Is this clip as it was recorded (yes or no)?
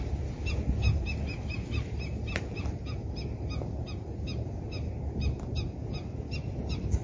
yes